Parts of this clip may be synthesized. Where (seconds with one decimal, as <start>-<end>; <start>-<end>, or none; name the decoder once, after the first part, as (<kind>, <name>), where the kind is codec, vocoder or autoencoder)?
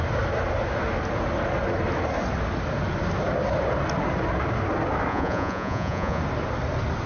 5.1-6.2 (vocoder, Vocos)